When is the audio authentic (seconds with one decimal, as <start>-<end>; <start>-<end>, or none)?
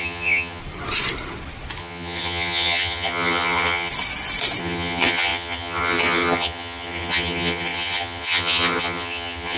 0.6-1.8; 3.9-4.6